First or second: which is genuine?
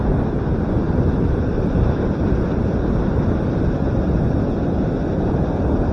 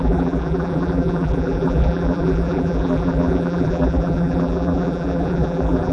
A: first